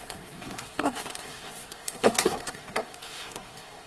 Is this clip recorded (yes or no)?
no